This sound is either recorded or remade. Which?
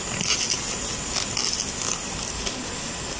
recorded